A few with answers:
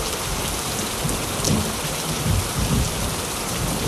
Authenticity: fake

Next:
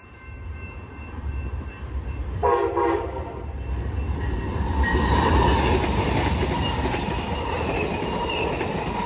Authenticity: fake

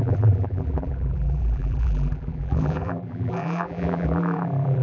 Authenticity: fake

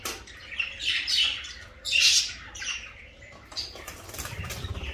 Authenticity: fake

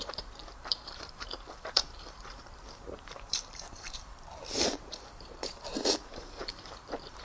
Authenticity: fake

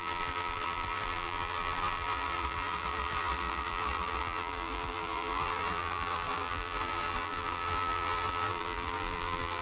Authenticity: fake